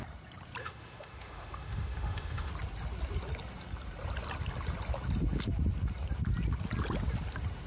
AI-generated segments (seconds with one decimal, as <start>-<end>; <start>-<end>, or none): 0.6-2.5